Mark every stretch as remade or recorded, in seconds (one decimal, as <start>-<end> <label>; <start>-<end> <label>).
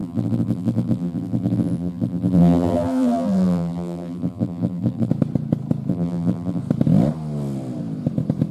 0.0-5.1 remade; 5.1-5.9 recorded; 5.9-6.6 remade; 6.6-8.5 recorded